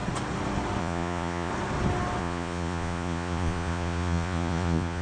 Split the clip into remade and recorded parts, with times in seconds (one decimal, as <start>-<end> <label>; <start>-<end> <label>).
0.0-0.8 recorded; 0.8-1.5 remade; 1.5-2.2 recorded; 2.2-5.0 remade